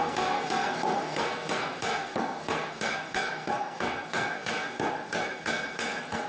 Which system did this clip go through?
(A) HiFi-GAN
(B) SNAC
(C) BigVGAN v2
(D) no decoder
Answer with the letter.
B